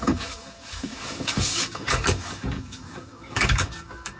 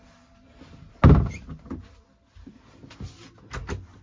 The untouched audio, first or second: second